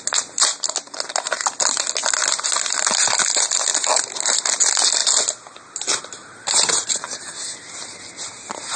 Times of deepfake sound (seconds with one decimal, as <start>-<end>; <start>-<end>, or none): none